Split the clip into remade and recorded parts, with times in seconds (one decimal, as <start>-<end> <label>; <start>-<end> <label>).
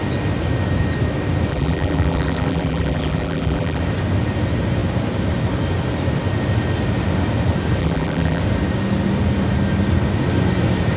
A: 0.0-1.5 recorded; 1.5-3.8 remade; 3.8-7.8 recorded; 7.8-8.4 remade; 8.4-11.0 recorded